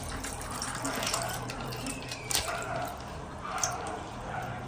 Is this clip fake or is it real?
fake